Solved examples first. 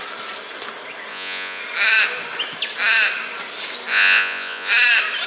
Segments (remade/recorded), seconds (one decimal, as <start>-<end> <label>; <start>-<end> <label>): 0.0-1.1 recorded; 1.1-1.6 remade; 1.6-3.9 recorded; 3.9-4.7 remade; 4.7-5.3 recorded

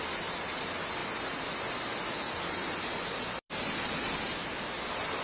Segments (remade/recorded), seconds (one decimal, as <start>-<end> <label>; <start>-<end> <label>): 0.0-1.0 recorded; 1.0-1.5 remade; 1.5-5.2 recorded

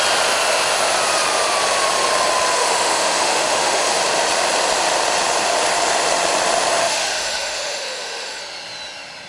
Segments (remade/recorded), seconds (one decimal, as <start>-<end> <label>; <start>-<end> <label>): 0.0-2.6 recorded; 2.6-4.0 remade; 4.0-6.8 recorded; 6.8-8.4 remade; 8.4-9.3 recorded